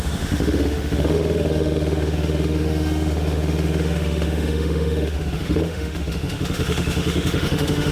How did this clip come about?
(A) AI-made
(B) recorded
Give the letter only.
A